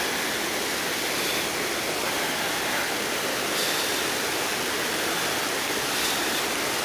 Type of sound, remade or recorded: recorded